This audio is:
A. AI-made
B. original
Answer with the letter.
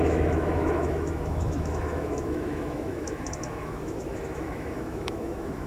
A